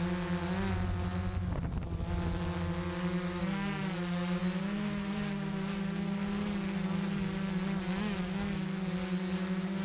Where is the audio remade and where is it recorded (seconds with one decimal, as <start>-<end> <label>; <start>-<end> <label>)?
0.0-9.8 recorded